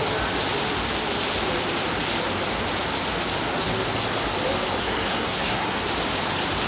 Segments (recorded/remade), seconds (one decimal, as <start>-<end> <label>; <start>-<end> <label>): 0.0-4.8 recorded; 4.8-5.9 remade; 5.9-6.7 recorded